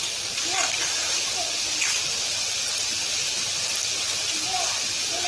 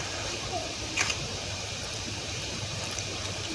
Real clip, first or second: first